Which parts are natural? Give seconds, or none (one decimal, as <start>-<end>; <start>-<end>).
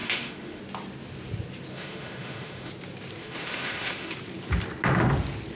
0.6-1.7; 2.7-3.2; 4.1-5.5